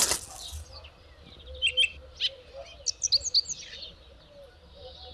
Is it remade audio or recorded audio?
recorded